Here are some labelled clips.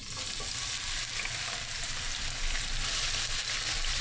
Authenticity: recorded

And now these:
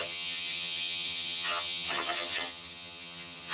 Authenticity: remade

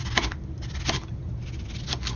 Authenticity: recorded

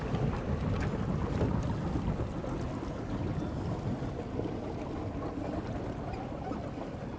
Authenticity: recorded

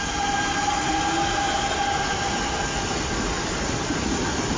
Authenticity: recorded